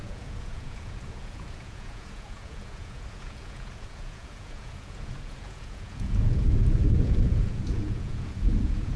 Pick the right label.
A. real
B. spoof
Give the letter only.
B